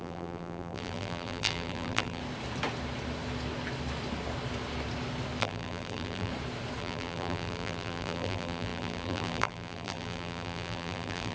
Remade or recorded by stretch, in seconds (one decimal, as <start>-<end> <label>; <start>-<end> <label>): 0.0-2.2 remade; 2.2-5.4 recorded; 5.4-6.3 remade; 6.3-6.8 recorded; 6.8-11.3 remade